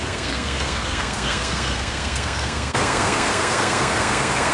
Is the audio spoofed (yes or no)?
yes